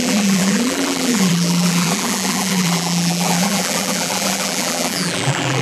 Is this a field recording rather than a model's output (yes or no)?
no